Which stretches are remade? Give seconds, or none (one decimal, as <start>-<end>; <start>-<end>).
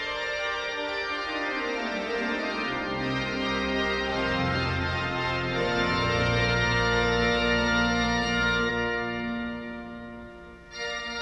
4.1-8.7